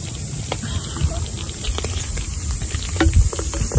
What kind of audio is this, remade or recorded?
recorded